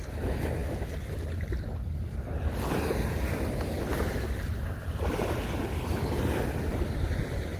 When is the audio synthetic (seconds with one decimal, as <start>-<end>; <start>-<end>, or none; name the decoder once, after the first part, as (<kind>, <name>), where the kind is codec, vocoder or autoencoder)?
none